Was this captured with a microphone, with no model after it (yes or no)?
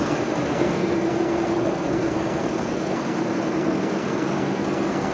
no